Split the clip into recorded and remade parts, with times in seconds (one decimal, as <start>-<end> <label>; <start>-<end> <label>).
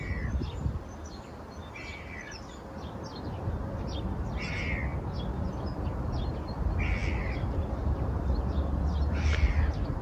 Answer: 0.0-10.0 recorded